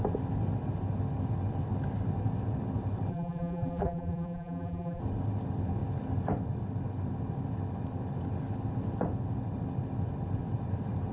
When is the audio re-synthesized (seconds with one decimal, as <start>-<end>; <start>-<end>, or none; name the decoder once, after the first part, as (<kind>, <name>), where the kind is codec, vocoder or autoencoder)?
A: 3.1-5.0 (vocoder, BigVGAN v2)